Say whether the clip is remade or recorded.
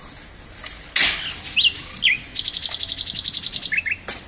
recorded